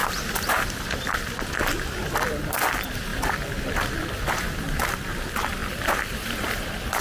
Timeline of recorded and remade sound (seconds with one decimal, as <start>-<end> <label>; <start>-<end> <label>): 0.0-5.6 remade; 5.6-6.6 recorded; 6.6-7.0 remade